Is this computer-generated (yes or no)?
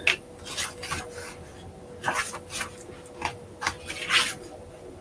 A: no